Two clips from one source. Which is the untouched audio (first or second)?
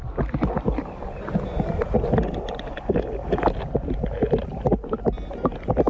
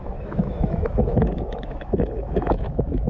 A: first